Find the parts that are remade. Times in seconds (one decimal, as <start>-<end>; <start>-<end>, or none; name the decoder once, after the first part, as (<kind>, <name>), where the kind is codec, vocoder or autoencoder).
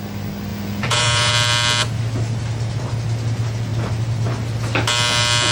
0.5-1.3 (vocoder, Vocos)